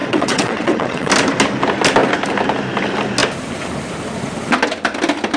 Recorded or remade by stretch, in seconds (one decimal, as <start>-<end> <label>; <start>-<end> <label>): 0.0-1.1 remade; 1.1-5.4 recorded